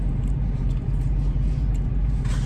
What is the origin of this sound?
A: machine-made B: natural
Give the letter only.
A